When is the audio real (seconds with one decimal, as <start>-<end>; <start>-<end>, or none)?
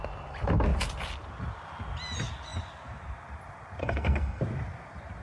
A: 0.0-3.8; 4.4-5.2